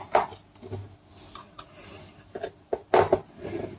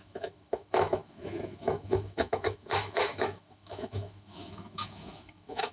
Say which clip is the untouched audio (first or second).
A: first